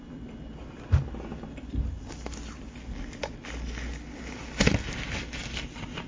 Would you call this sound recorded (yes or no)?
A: yes